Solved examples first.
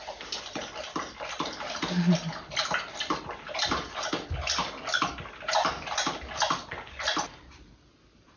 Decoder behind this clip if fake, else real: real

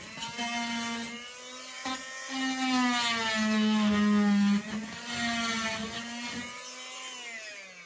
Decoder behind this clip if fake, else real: real